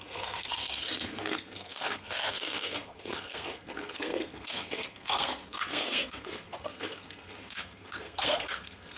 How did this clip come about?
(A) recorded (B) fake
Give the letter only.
B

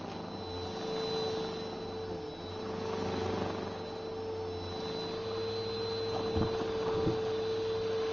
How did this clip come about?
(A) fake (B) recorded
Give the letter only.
B